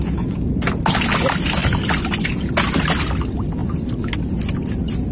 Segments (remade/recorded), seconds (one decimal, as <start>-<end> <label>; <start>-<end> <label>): 0.0-5.1 recorded